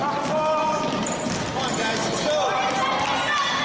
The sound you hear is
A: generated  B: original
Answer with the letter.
B